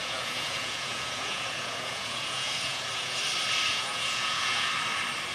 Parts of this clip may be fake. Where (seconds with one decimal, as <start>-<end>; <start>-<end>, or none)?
0.0-3.2; 3.7-4.7